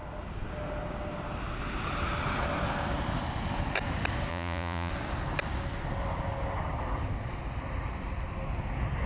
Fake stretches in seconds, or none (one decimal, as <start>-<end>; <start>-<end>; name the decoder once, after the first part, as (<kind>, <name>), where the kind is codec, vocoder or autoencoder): 4.3-4.9 (vocoder, Vocos)